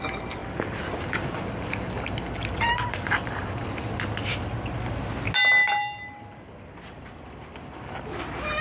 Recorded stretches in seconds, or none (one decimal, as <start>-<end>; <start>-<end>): 0.0-0.4; 3.7-5.6; 8.0-8.6